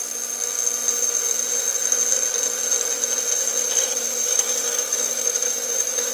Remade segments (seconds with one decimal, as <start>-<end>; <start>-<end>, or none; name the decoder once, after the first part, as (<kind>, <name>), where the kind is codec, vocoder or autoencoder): 3.9-6.1 (autoencoder, DAC-VAE)